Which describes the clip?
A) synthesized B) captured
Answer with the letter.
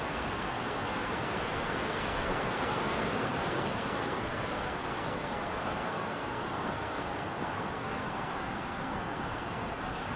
A